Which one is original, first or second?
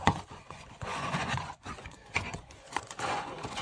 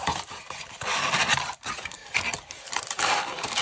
second